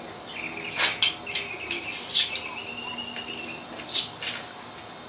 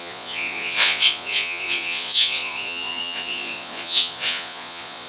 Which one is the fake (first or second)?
second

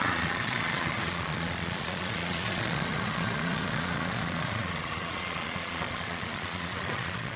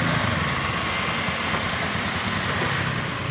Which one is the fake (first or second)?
first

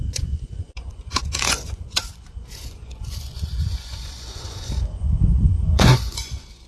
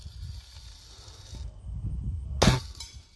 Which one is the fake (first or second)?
first